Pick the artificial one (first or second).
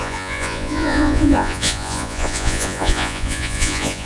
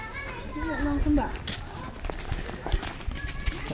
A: first